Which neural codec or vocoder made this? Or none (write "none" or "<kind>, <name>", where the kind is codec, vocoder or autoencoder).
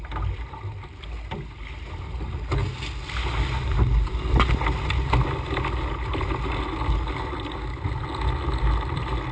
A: none